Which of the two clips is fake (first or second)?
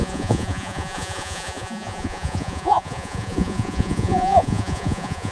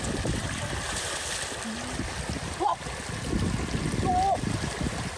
first